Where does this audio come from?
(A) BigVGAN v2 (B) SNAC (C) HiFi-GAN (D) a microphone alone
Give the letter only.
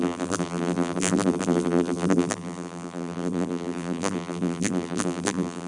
A